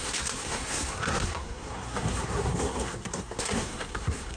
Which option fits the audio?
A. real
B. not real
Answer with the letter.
B